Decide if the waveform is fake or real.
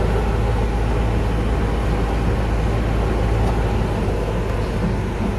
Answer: real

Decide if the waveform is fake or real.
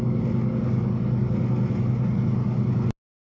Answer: real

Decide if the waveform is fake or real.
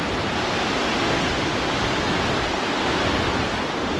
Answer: real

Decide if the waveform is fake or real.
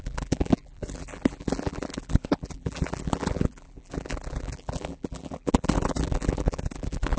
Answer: fake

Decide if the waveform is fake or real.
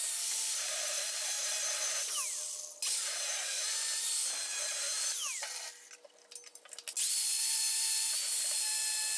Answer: real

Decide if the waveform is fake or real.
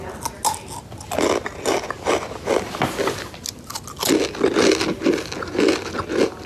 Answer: real